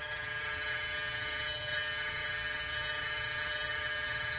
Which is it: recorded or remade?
remade